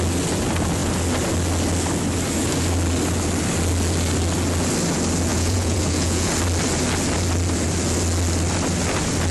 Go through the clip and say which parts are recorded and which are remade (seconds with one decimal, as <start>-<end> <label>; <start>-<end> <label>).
0.0-5.3 recorded; 5.3-6.3 remade; 6.3-9.3 recorded